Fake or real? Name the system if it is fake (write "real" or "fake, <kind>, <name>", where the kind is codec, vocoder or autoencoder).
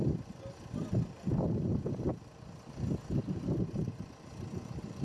real